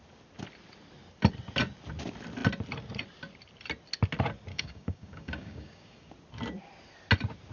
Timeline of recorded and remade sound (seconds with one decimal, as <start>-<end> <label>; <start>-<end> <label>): 0.0-4.5 recorded; 4.5-6.1 remade; 6.1-7.5 recorded